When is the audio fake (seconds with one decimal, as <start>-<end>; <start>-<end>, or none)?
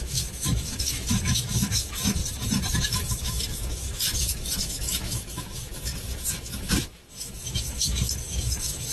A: 0.0-2.2; 2.8-8.9